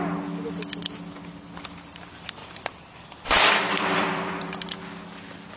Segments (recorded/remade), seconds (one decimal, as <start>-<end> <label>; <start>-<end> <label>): 0.0-2.4 recorded; 2.4-4.5 remade; 4.5-5.6 recorded